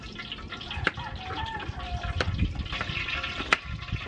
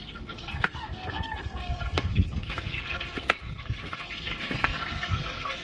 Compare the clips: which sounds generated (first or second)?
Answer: second